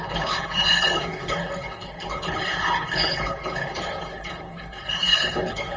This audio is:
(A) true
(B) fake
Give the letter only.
B